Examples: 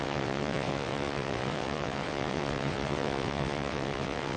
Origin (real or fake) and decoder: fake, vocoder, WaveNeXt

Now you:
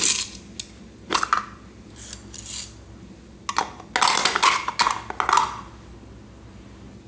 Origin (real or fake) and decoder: real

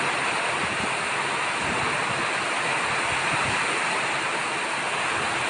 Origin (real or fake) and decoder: real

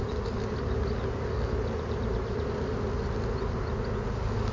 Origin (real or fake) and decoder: real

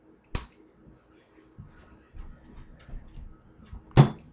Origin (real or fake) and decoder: real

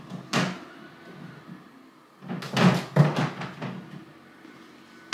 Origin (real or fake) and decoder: real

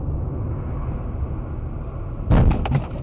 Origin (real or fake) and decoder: real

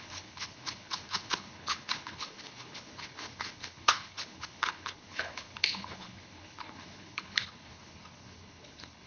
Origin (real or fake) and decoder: fake, codec, HILCodec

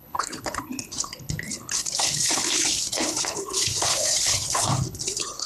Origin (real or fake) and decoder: fake, codec, HILCodec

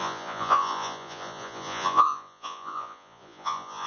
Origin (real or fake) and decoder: fake, vocoder, Vocos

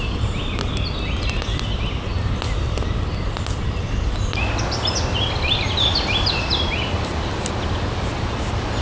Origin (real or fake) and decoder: real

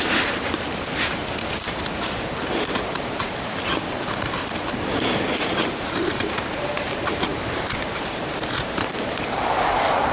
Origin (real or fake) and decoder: fake, vocoder, BigVGAN v2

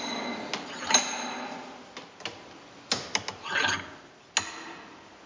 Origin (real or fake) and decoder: real